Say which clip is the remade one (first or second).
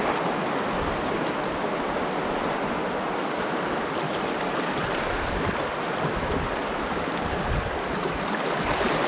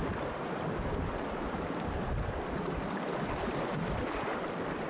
second